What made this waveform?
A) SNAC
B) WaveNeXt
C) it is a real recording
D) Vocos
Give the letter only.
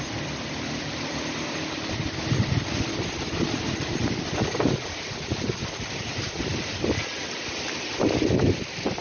C